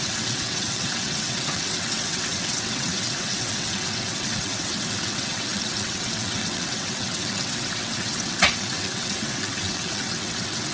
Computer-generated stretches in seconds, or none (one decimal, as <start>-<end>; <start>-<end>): 0.0-10.7